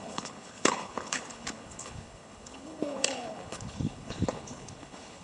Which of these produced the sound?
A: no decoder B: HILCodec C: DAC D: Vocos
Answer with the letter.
B